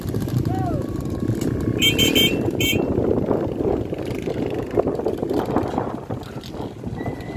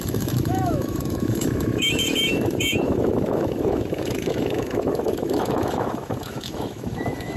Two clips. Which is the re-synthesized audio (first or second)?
second